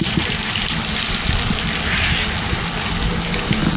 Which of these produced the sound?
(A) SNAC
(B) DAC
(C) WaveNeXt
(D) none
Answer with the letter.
D